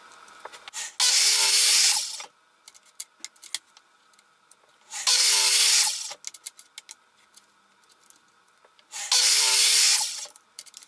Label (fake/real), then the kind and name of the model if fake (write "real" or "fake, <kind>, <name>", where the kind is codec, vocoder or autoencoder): real